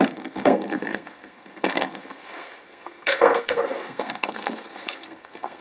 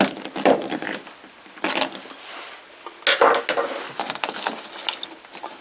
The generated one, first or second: first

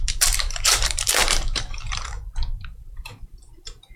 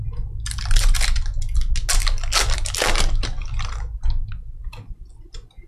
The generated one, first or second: first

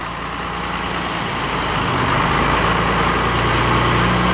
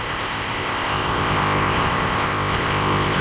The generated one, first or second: second